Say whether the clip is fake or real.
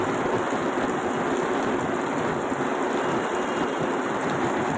real